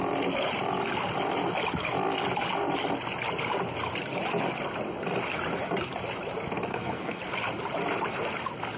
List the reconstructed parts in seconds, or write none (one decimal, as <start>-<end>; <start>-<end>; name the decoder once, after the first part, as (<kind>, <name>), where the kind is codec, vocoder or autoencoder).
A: 6.7-7.2 (codec, SNAC)